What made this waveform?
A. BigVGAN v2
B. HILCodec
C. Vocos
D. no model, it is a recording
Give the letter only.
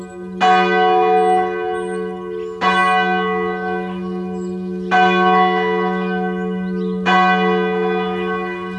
D